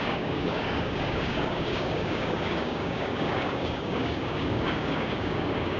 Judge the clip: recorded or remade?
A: remade